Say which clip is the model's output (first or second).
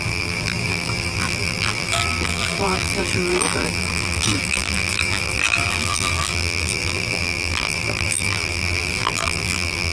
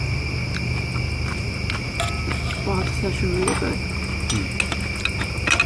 first